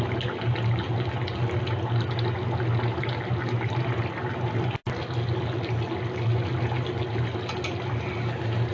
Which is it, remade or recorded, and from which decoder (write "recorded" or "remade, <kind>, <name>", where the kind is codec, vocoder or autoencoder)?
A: recorded